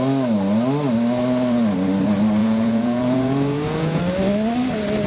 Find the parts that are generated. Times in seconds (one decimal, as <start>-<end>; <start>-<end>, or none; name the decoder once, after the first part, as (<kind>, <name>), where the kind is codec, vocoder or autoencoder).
2.4-4.0 (vocoder, Vocos)